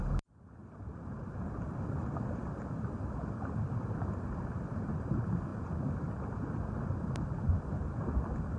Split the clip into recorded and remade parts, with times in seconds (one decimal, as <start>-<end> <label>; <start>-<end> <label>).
0.0-8.6 remade